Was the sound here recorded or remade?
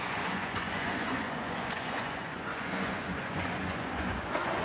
remade